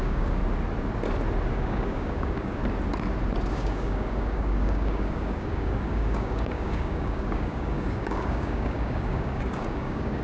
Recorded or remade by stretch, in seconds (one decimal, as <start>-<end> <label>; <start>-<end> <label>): 0.0-0.4 remade; 0.4-1.5 recorded; 1.5-2.6 remade; 2.6-3.5 recorded; 3.5-10.2 remade